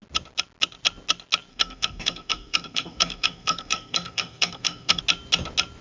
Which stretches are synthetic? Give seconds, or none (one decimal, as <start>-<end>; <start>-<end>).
1.5-5.0

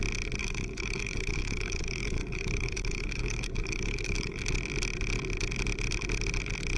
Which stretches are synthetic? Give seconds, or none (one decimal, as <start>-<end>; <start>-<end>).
0.4-4.4